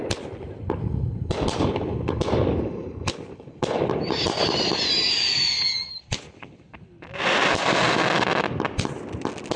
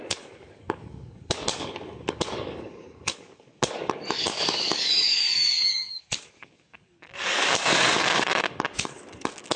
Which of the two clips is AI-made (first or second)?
second